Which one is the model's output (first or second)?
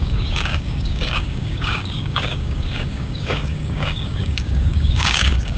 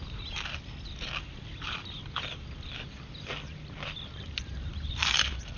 first